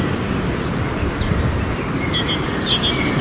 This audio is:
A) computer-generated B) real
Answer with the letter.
B